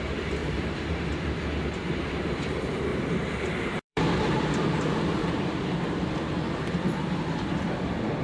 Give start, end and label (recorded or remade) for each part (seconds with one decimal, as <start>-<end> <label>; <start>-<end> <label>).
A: 0.0-0.4 recorded; 0.4-1.0 remade; 1.0-2.9 recorded; 2.9-6.1 remade; 6.1-8.2 recorded